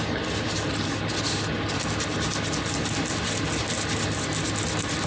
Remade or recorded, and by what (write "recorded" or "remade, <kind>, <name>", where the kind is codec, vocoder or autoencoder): recorded